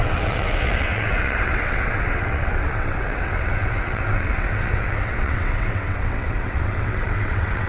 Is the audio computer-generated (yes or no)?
yes